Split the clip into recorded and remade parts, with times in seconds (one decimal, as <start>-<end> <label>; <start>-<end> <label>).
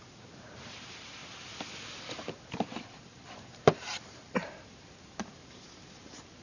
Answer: 0.0-1.2 remade; 1.2-2.0 recorded; 2.0-6.4 remade